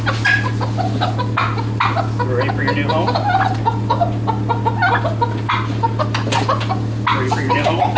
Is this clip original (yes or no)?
yes